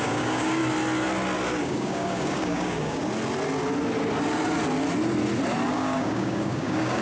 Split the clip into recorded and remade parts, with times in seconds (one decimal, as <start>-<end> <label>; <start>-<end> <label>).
0.0-0.6 remade; 0.6-1.6 recorded; 1.6-3.0 remade; 3.0-5.7 recorded; 5.7-7.0 remade